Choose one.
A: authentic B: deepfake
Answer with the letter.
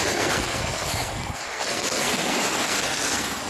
B